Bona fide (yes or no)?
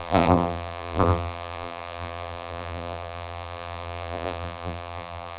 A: no